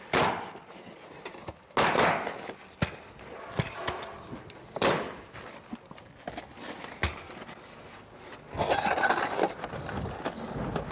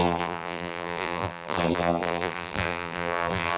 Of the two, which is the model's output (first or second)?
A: second